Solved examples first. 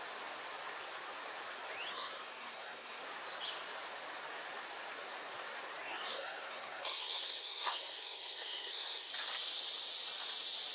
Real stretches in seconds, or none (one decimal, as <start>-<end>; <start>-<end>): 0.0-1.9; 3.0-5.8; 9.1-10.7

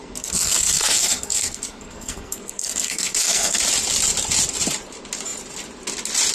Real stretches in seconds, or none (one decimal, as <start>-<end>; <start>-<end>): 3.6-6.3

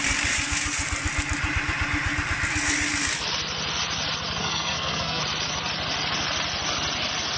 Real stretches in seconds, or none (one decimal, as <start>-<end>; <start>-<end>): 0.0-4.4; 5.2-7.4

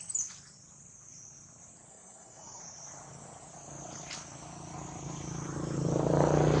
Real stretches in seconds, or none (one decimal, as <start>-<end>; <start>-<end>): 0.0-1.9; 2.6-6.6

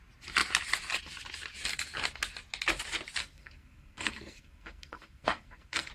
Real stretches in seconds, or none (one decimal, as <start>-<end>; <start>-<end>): 0.0-3.2

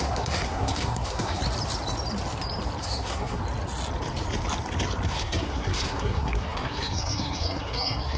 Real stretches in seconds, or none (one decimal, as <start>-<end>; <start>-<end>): 1.4-2.8; 3.4-5.1

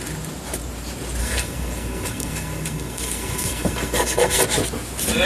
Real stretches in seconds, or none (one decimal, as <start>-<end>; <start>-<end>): 0.0-1.2; 4.4-5.3